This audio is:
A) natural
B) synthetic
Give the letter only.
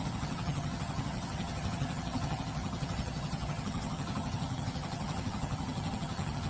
B